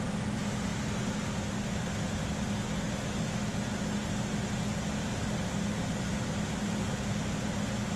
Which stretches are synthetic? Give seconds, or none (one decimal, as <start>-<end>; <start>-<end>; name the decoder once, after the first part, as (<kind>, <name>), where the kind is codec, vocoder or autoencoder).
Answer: none